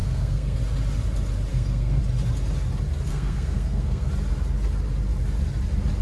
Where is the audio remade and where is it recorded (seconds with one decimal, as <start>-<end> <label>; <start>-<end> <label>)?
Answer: 0.0-0.6 remade; 0.6-1.5 recorded; 1.5-2.0 remade; 2.0-3.1 recorded; 3.1-4.1 remade; 4.1-6.0 recorded